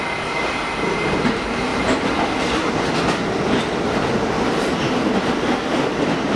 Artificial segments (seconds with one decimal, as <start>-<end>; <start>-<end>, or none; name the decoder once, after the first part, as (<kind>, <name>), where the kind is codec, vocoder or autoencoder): none